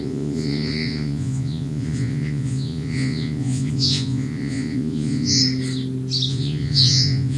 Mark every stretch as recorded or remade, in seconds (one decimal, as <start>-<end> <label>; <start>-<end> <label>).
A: 0.0-5.4 remade; 5.4-6.3 recorded; 6.3-7.4 remade